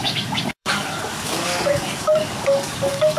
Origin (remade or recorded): remade